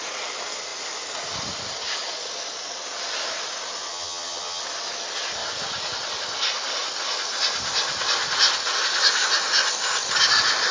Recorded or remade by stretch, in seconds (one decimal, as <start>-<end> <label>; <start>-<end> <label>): 0.0-3.9 recorded; 3.9-4.6 remade; 4.6-10.7 recorded